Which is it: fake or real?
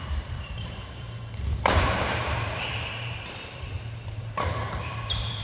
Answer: fake